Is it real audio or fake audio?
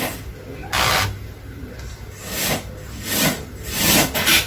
real